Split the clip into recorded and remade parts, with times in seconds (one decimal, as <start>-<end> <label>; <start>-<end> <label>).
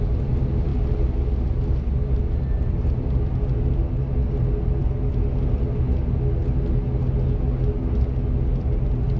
0.0-9.2 recorded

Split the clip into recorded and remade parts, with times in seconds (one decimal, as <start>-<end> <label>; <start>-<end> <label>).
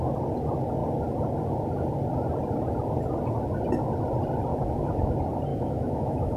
0.0-4.5 recorded; 4.5-5.1 remade; 5.1-5.5 recorded; 5.5-6.4 remade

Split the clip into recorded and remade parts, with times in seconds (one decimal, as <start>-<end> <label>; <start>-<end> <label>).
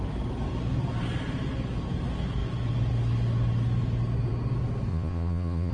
0.0-4.9 recorded; 4.9-5.7 remade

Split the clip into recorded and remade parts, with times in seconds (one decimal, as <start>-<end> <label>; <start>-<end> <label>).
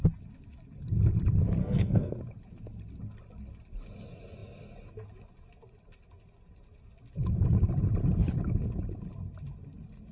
0.0-1.6 recorded; 1.6-2.2 remade; 2.2-10.1 recorded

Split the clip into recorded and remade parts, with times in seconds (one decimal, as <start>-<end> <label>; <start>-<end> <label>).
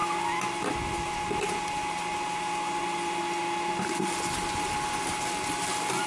0.0-6.1 recorded